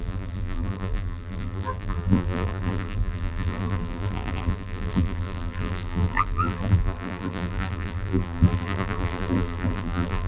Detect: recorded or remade remade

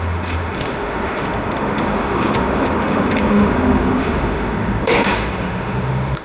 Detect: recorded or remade remade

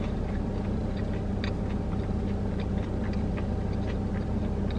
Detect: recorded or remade recorded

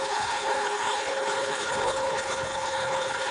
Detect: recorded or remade remade